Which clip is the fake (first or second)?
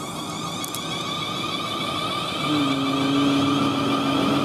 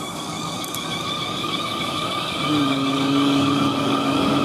second